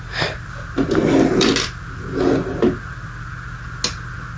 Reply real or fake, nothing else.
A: real